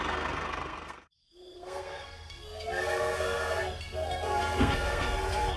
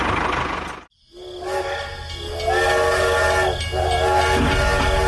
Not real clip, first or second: first